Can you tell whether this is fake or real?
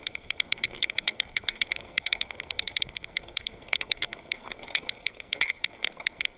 fake